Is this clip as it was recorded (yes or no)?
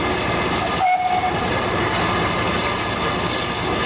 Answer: yes